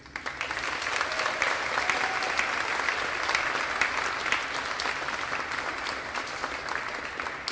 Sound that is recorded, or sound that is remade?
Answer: recorded